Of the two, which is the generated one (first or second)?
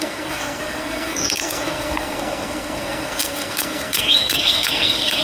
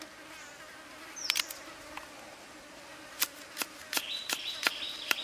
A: first